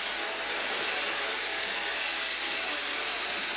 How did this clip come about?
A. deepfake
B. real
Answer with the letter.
B